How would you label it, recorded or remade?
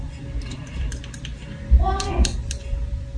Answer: remade